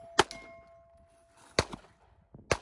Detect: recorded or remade recorded